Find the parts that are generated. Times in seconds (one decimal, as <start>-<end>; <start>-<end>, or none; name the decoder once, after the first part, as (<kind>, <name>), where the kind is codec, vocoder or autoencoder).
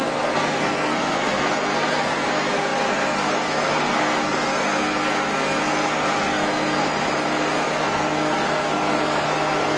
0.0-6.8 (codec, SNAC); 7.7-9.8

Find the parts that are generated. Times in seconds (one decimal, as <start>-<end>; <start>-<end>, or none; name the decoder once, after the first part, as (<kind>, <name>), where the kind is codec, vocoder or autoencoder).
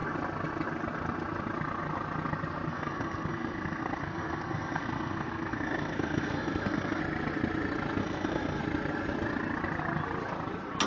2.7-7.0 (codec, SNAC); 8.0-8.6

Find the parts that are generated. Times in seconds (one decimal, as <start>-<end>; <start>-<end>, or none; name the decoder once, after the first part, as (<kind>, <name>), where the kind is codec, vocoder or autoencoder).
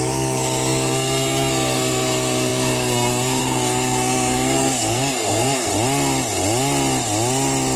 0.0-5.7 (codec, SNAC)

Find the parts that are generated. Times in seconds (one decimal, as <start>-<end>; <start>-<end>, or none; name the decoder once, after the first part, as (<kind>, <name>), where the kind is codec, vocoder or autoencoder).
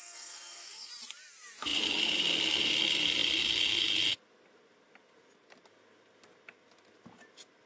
0.0-0.9 (codec, SNAC)